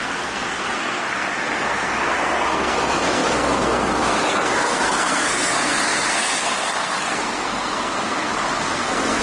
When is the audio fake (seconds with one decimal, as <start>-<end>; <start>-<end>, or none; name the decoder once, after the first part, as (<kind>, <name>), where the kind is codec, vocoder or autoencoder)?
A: 0.0-9.2 (codec, SNAC)